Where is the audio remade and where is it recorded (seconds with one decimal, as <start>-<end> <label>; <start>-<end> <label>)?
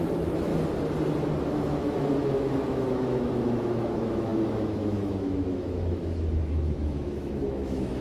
0.0-0.5 remade; 0.5-1.4 recorded; 1.4-8.0 remade